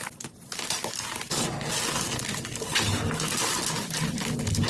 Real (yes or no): yes